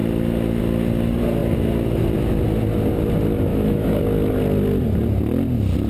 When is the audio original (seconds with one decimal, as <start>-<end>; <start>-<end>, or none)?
0.0-3.5; 4.0-5.9